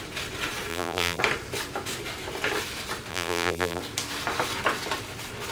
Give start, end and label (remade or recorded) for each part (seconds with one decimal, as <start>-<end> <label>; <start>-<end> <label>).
0.0-0.7 recorded; 0.7-1.2 remade; 1.2-3.1 recorded; 3.1-3.8 remade; 3.8-5.5 recorded